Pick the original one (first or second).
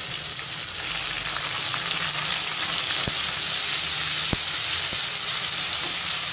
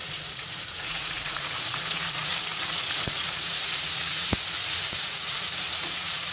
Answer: first